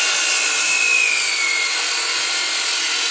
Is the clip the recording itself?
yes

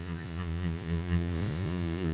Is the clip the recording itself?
no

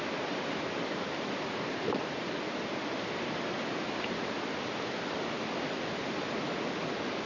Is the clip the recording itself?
yes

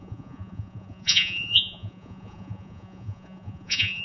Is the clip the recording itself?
no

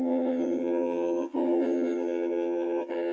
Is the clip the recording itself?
no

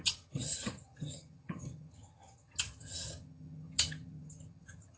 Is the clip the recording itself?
no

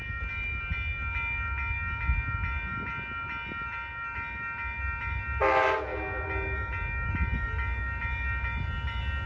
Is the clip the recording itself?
yes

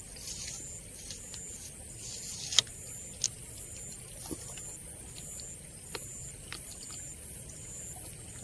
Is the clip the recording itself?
yes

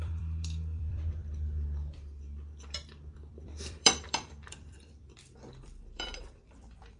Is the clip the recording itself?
no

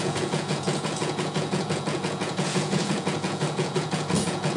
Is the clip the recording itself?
no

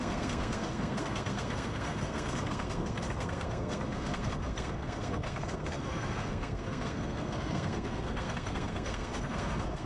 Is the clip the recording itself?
no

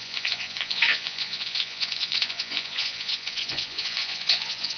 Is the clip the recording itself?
no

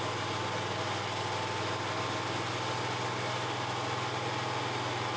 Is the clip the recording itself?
yes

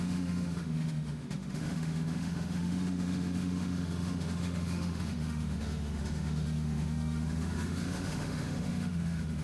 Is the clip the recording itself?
no